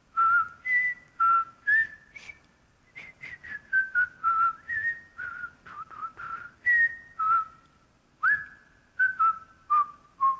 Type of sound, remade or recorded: recorded